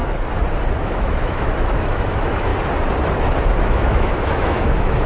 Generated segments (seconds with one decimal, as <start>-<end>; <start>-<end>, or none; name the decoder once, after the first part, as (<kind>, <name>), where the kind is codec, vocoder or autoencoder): 0.8-2.5 (autoencoder, DAC-VAE); 3.6-5.1